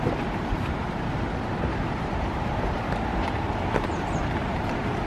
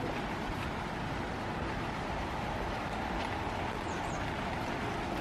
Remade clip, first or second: first